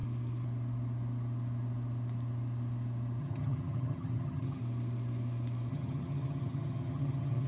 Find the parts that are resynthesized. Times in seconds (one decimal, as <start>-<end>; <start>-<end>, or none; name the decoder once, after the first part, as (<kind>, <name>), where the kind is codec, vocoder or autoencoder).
3.2-4.6 (vocoder, HiFi-GAN); 5.7-7.5